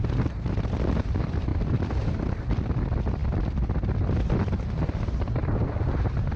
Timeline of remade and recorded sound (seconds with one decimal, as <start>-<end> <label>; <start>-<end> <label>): 0.0-6.4 remade